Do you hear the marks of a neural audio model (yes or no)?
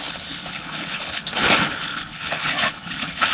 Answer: yes